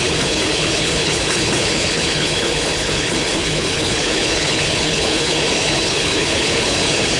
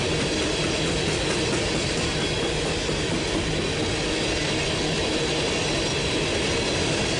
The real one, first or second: second